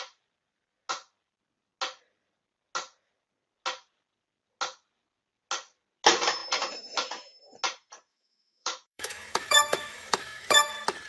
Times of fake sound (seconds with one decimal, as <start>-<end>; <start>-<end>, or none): 8.1-10.7